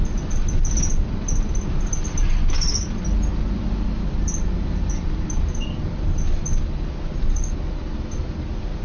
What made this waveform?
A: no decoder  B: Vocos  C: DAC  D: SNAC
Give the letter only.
A